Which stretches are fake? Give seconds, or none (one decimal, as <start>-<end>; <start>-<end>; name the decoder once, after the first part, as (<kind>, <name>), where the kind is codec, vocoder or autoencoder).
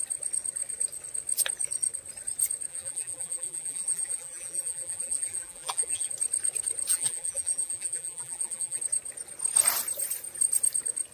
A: 2.7-6.1 (vocoder, BigVGAN v2); 6.9-8.8